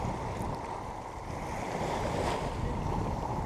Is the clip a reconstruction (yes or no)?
no